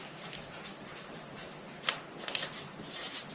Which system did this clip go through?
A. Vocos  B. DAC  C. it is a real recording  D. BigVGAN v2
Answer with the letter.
C